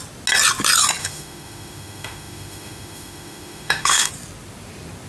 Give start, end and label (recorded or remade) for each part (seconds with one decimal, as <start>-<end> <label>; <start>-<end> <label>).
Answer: 0.0-1.0 recorded; 1.0-4.1 remade; 4.1-5.1 recorded